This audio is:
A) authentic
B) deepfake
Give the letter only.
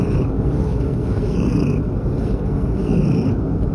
B